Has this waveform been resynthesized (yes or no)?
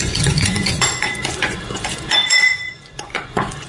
yes